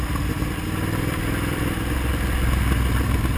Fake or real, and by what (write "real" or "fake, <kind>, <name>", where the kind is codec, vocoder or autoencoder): fake, vocoder, BigVGAN v2